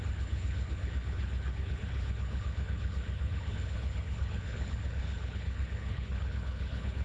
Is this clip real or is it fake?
fake